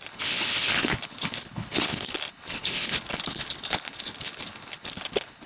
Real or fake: fake